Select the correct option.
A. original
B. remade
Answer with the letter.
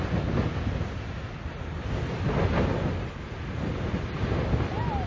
A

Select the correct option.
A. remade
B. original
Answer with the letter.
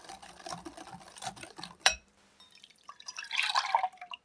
A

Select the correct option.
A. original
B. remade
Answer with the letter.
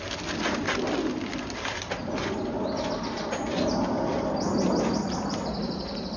A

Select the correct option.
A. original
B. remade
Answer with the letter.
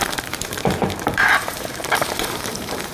B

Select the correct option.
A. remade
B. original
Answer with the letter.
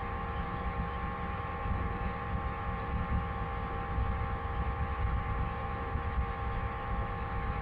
A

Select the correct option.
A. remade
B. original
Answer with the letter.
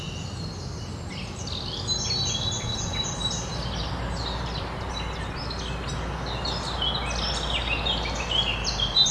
B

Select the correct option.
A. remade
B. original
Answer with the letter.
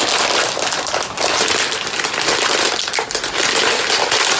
A